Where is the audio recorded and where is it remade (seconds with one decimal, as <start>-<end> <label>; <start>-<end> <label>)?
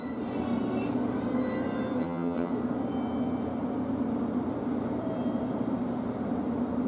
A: 0.0-2.0 recorded; 2.0-2.5 remade; 2.5-6.9 recorded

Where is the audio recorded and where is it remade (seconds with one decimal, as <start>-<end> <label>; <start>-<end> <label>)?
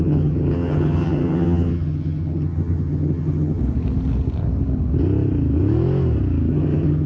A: 0.0-3.6 remade; 3.6-6.5 recorded; 6.5-7.1 remade